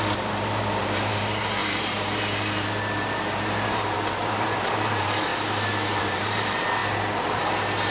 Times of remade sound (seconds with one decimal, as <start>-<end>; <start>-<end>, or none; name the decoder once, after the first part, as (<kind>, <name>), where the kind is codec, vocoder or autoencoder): 0.0-5.3 (vocoder, BigVGAN v2); 6.0-6.8